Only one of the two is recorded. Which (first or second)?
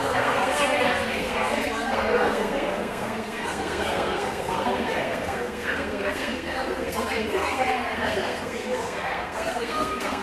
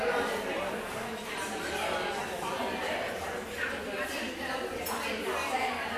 second